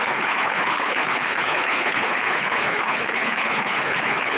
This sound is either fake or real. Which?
fake